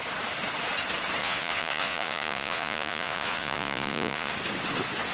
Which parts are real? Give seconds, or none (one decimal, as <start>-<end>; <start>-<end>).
0.0-1.2; 4.3-5.1